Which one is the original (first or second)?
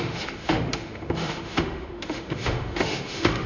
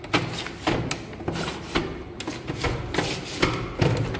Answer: second